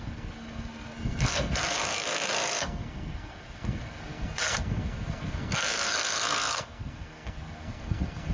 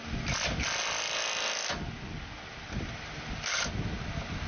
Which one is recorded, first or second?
second